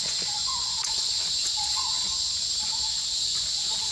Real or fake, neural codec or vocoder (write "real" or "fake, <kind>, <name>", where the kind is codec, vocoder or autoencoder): fake, vocoder, Vocos